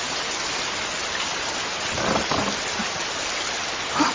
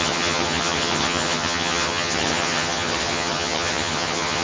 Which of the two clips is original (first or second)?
first